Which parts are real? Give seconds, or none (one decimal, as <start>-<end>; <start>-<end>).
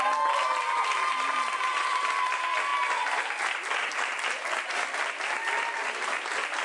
0.0-6.6